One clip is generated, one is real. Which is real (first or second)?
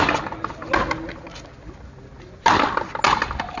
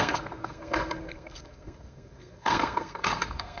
first